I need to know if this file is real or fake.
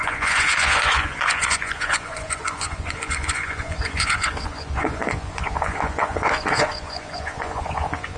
fake